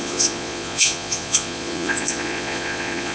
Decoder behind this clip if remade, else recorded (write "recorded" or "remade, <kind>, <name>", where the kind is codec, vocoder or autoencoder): remade, vocoder, Vocos